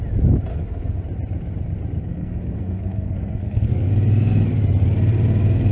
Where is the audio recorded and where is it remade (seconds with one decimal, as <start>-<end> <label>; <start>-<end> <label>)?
0.0-0.5 recorded; 0.5-1.0 remade; 1.0-2.0 recorded; 2.0-3.9 remade; 3.9-5.7 recorded